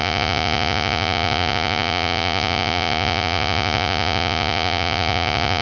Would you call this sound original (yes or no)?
no